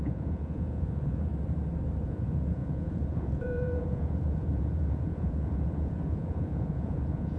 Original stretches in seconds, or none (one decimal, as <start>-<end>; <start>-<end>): 1.3-2.0

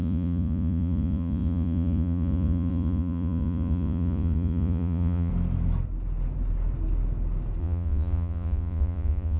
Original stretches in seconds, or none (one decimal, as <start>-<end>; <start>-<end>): 5.3-7.6

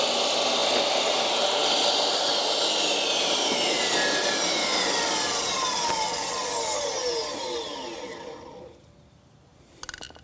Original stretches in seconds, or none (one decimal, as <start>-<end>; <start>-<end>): 0.0-10.2